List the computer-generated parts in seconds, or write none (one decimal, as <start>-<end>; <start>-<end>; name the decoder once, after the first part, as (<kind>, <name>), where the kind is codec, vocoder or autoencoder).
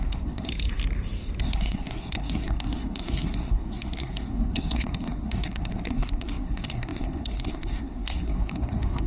0.0-0.5 (codec, SNAC); 1.4-9.1